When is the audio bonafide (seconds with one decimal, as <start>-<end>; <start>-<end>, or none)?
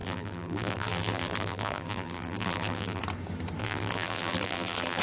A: 3.0-3.6